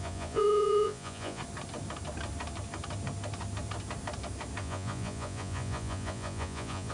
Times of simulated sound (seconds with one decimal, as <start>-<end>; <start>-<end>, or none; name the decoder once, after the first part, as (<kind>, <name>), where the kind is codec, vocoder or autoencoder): 0.0-1.4 (vocoder, Vocos); 4.6-6.9